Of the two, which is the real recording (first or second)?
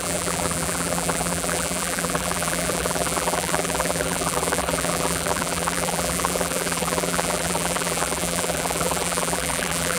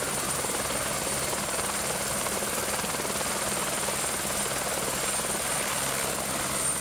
second